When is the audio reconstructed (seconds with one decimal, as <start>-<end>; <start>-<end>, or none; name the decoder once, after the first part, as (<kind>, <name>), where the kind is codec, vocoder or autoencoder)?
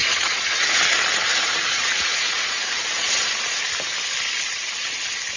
0.0-0.8 (vocoder, Vocos); 1.3-2.8